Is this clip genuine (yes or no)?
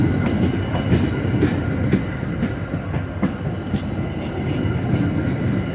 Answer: yes